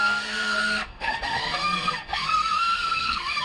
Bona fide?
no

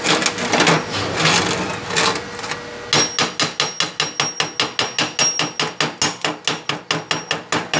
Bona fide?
yes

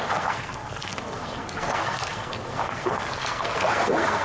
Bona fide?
no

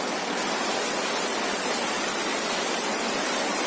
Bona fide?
yes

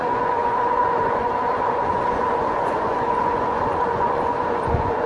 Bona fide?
no